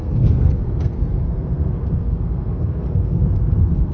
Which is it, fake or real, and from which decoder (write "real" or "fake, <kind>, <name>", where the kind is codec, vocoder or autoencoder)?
fake, codec, SNAC